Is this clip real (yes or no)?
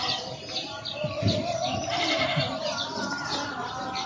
yes